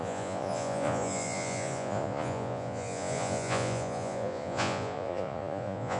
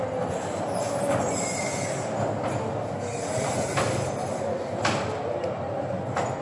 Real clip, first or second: second